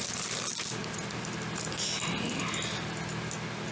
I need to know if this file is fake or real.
real